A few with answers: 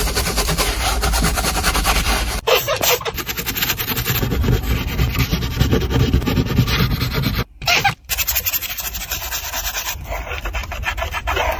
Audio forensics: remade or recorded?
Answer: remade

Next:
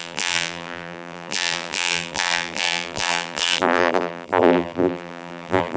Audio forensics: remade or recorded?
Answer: remade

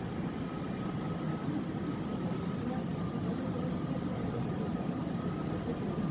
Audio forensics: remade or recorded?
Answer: recorded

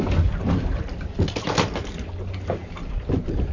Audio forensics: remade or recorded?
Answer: recorded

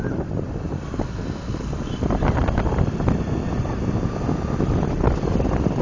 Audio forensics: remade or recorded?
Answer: recorded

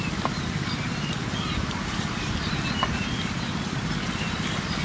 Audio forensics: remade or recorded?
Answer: recorded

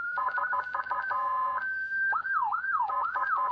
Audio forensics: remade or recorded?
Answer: remade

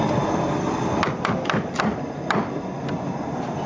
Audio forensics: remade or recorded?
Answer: remade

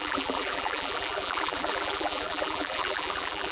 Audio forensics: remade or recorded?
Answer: remade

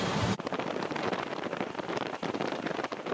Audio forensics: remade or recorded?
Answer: remade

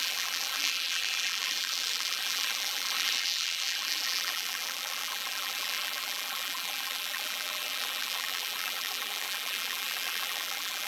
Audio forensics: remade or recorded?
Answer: remade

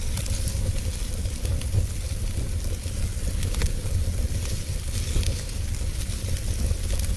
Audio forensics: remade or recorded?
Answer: remade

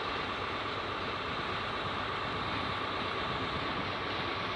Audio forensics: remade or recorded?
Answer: recorded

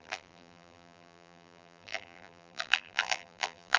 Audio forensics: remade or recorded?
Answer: remade